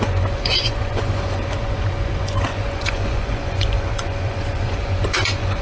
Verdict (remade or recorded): remade